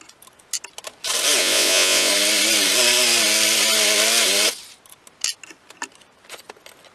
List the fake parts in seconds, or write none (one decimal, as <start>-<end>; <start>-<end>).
1.4-2.1